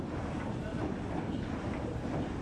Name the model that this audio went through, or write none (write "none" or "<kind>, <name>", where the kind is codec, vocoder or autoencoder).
none